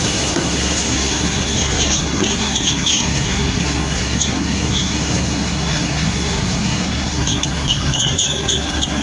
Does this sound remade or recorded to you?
remade